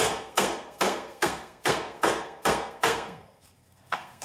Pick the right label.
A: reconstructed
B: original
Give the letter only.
A